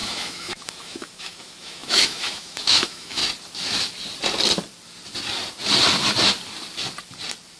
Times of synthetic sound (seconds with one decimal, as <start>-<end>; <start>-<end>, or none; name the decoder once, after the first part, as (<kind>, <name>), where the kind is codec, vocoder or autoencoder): 0.0-3.2 (autoencoder, DAC-VAE)